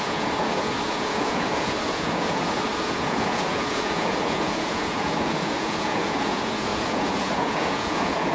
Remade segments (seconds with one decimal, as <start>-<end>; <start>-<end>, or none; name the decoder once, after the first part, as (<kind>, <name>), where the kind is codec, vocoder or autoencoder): 0.0-8.3 (vocoder, Vocos)